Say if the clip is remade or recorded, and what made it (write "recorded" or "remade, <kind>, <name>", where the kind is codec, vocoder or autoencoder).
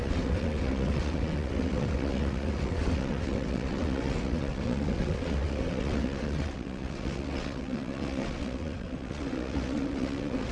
remade, vocoder, WaveNeXt